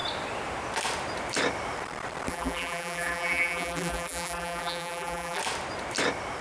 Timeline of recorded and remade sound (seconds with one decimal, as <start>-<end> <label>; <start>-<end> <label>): 0.0-2.3 recorded; 2.3-5.4 remade; 5.4-6.4 recorded